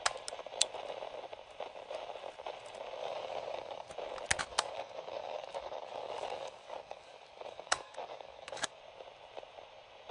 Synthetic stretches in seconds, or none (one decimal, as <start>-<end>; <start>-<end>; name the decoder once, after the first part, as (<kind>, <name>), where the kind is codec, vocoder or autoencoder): 3.0-3.9 (codec, DAC); 4.5-8.8